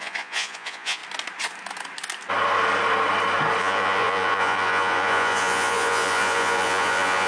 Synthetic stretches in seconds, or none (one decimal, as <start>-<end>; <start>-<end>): 0.0-1.0; 3.6-7.3